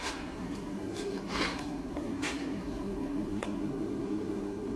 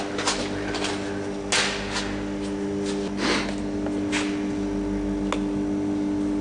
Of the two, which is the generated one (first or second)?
first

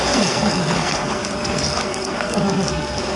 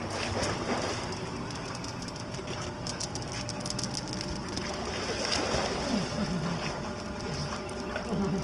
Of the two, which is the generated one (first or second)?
first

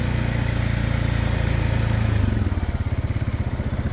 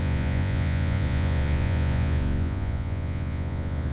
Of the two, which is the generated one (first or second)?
second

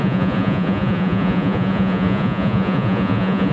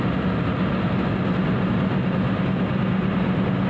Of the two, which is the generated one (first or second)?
first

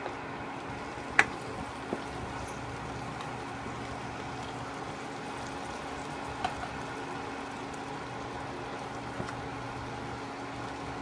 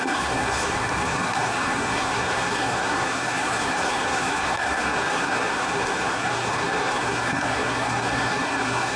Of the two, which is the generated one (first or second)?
second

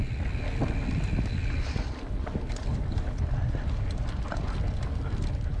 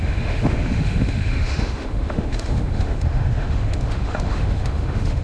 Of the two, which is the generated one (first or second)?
second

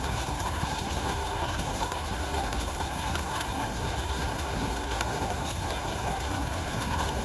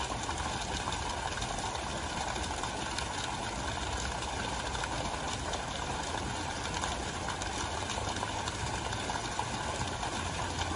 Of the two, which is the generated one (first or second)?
first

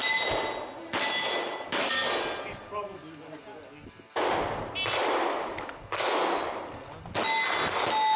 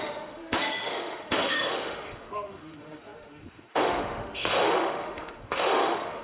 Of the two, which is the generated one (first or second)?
second